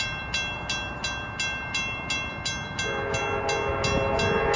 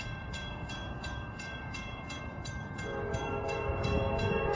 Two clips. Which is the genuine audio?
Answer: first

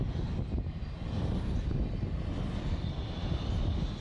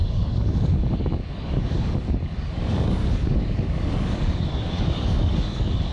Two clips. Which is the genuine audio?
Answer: first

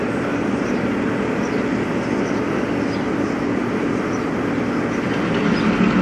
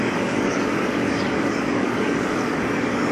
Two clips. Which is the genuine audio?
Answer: first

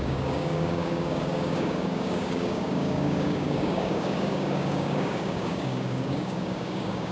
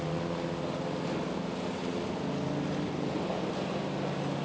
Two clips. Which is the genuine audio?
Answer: second